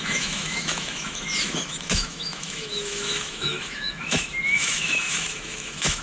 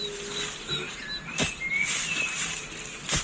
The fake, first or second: first